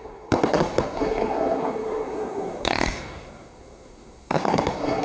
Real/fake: fake